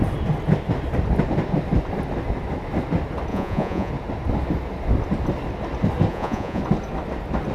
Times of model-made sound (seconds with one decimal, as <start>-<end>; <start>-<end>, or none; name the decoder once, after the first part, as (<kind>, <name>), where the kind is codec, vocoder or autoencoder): 3.3-3.9 (vocoder, Vocos); 6.1-6.6